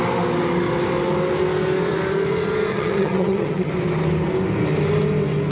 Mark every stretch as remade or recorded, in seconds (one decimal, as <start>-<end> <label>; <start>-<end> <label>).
0.0-2.7 recorded; 2.7-3.7 remade; 3.7-5.5 recorded